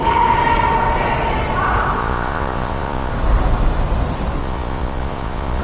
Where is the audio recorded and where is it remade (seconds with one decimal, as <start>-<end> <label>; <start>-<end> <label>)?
0.0-2.0 recorded; 2.0-3.1 remade; 3.1-4.4 recorded; 4.4-5.6 remade